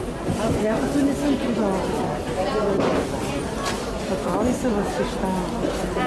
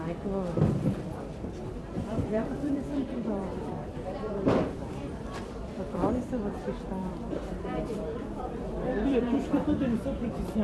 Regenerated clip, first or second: second